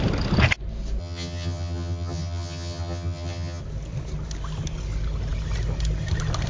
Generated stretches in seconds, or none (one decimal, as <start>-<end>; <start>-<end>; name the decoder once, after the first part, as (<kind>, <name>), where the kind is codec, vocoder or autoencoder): 1.0-3.6 (vocoder, HiFi-GAN)